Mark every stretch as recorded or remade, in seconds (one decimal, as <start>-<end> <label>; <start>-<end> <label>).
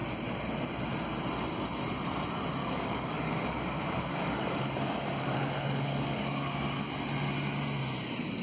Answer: 0.0-2.6 recorded; 2.6-6.9 remade; 6.9-8.4 recorded